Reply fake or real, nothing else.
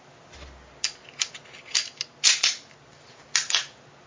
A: real